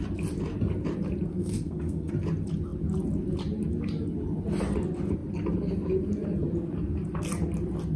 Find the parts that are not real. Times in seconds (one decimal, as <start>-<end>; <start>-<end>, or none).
1.3-2.1